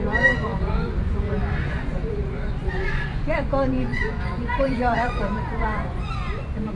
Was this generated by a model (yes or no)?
yes